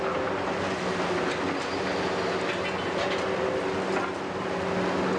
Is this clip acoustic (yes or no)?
yes